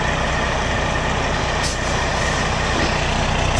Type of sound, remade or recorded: recorded